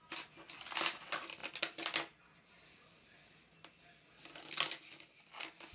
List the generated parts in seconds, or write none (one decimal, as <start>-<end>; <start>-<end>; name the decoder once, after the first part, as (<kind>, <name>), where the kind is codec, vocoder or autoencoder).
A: none